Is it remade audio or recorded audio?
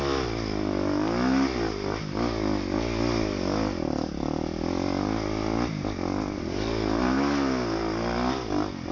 recorded